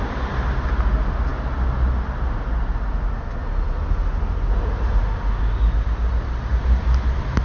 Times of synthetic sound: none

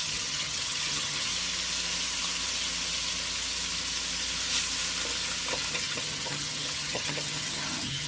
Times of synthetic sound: 0.0-1.3 (vocoder, HiFi-GAN); 5.7-8.1

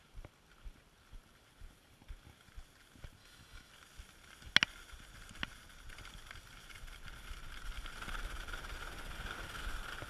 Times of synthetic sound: 3.2-3.7 (autoencoder, DAC-VAE)

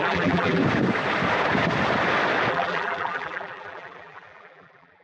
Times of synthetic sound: 0.0-0.6 (vocoder, BigVGAN v2); 2.5-5.0